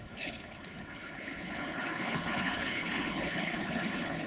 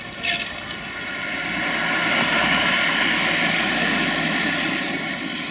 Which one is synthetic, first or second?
first